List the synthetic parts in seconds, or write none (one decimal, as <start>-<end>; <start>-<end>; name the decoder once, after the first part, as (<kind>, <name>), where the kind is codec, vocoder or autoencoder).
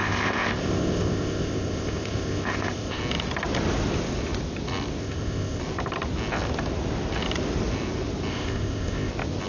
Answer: 0.0-3.0 (codec, ZipCodec); 5.0-5.6; 8.3-9.1